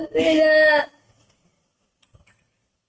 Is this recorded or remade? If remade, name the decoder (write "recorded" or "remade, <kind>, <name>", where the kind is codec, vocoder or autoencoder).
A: recorded